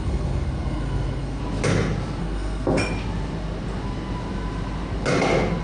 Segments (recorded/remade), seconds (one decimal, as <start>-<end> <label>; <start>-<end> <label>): 0.0-1.4 remade; 1.4-2.2 recorded; 2.2-2.8 remade; 2.8-5.6 recorded